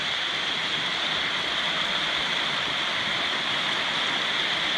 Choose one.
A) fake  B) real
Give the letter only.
B